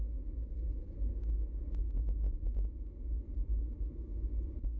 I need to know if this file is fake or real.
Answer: real